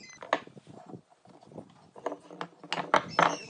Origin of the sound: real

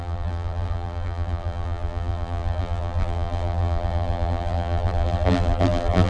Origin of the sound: fake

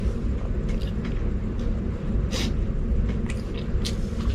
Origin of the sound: real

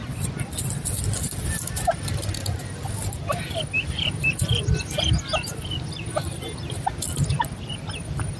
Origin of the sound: real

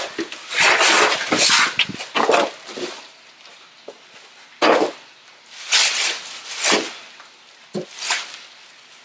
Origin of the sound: real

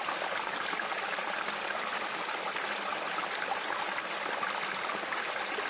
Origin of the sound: real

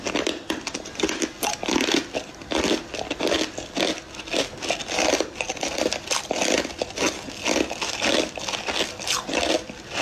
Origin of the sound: real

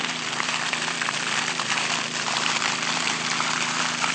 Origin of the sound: fake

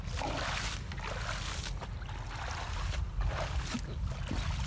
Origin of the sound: real